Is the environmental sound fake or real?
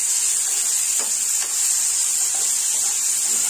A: real